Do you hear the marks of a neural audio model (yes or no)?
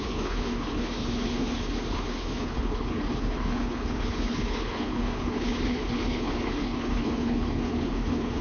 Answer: yes